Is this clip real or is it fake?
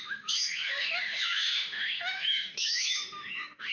fake